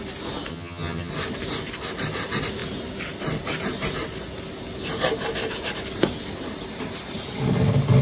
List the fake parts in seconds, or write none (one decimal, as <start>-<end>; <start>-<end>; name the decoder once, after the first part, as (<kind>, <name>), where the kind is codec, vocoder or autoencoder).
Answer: 0.5-1.1 (vocoder, HiFi-GAN)